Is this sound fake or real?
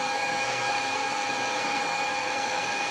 fake